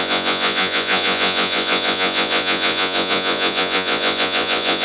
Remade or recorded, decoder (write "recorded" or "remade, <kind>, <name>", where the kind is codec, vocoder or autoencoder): remade, vocoder, Vocos